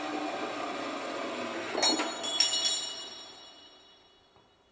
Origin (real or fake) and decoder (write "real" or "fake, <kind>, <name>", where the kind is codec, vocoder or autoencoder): real